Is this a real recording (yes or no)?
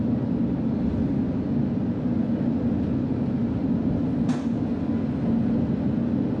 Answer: yes